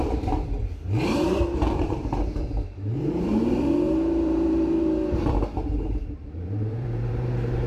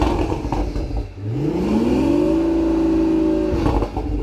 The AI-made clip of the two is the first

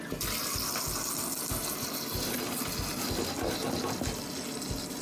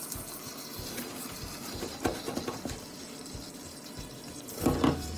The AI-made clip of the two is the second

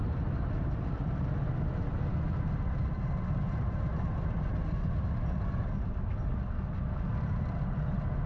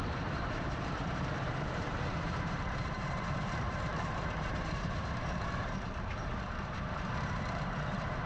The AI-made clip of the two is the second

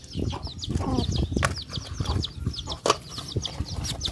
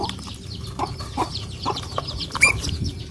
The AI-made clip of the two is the second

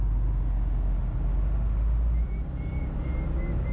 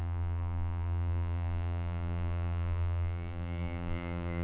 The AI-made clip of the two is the second